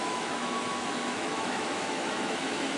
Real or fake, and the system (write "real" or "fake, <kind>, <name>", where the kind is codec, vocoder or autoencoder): fake, autoencoder, DAC-VAE